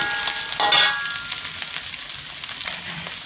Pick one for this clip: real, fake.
real